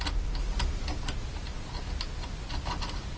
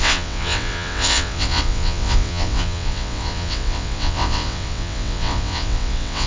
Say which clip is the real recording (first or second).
first